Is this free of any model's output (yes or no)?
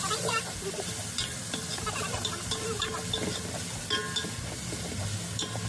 yes